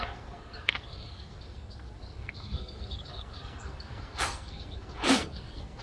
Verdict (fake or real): fake